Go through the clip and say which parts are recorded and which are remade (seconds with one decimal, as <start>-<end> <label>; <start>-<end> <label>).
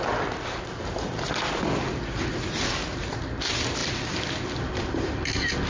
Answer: 0.0-5.7 recorded